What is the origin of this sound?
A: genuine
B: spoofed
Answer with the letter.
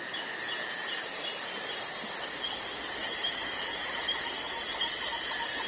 A